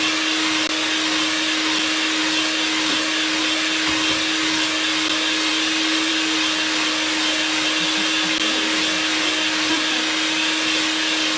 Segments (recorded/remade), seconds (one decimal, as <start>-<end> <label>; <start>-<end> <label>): 0.0-11.4 recorded